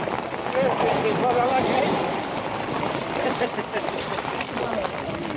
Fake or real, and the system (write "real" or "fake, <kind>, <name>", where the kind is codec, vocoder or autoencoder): real